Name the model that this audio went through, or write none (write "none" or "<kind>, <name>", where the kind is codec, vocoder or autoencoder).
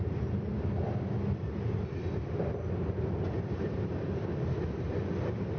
none